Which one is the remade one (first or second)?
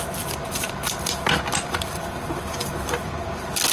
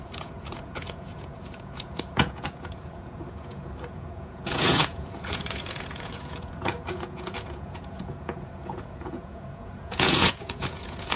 second